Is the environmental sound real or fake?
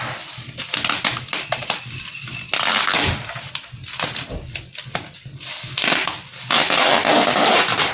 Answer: real